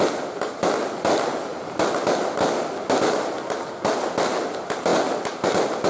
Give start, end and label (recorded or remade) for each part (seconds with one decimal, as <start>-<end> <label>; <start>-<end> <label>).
0.0-5.9 recorded